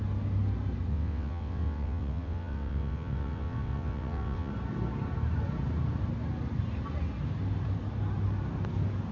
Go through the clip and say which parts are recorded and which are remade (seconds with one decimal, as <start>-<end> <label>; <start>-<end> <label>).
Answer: 0.0-0.9 recorded; 0.9-4.5 remade; 4.5-9.1 recorded